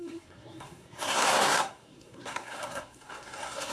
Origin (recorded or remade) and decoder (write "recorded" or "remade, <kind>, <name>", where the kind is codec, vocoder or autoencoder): remade, codec, SNAC